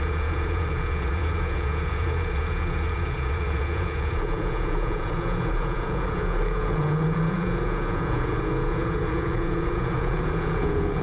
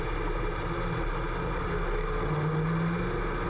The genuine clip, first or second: second